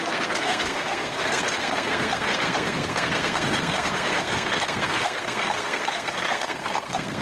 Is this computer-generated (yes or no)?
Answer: yes